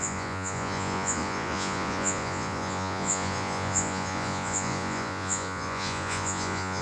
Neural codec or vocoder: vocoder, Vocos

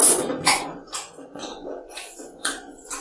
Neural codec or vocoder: vocoder, Vocos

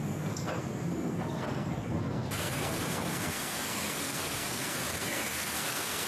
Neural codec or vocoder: codec, SNAC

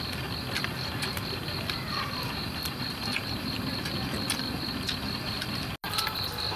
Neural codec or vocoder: none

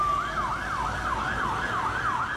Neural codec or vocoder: none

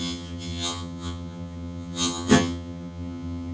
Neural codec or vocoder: vocoder, HiFi-GAN